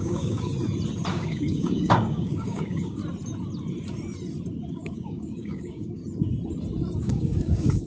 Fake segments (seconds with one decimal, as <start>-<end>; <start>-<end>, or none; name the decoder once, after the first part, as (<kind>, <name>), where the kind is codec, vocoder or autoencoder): 0.0-0.5 (codec, DAC); 1.1-3.0; 4.7-6.0; 7.0-7.9